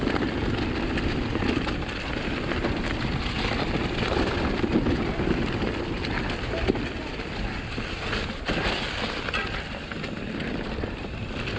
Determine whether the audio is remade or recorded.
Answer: recorded